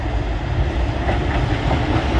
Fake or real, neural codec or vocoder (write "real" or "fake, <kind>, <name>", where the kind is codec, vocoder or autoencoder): real